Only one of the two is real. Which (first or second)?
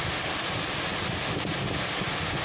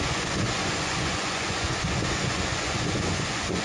first